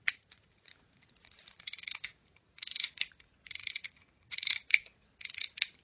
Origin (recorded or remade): remade